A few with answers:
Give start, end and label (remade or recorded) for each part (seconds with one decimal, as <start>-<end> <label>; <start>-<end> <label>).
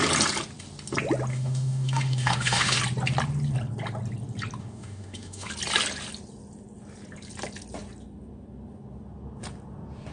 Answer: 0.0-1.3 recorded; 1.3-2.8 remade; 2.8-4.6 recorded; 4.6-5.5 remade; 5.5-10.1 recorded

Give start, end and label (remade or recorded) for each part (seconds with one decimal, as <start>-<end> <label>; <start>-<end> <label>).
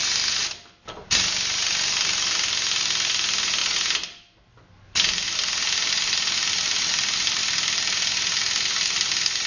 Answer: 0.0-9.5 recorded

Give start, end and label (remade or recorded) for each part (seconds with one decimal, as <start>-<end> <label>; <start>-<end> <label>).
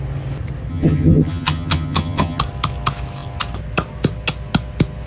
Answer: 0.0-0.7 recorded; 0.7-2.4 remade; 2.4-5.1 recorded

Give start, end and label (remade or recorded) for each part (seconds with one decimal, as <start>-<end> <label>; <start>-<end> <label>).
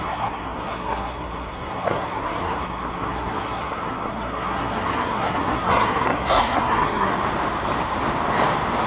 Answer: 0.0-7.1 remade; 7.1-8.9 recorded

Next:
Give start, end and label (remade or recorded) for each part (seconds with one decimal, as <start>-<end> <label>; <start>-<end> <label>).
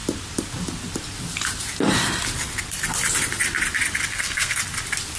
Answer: 0.0-4.1 recorded; 4.1-4.6 remade; 4.6-5.2 recorded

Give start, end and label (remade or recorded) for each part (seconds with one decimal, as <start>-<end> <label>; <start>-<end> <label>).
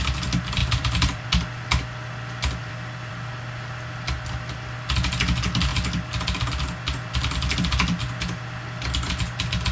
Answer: 0.0-0.6 recorded; 0.6-1.3 remade; 1.3-2.6 recorded; 2.6-3.1 remade; 3.1-9.7 recorded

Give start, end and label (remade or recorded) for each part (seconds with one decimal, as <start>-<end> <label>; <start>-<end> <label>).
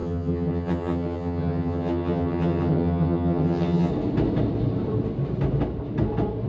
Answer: 0.0-3.9 remade; 3.9-6.5 recorded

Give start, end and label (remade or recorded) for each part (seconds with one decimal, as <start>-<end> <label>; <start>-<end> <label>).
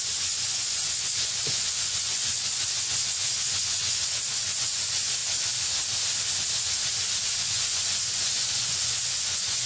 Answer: 0.0-5.2 remade; 5.2-7.2 recorded; 7.2-9.7 remade